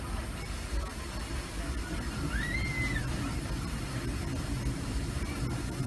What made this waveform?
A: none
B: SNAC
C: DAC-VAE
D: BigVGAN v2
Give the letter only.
A